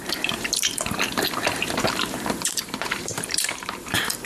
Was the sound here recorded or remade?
remade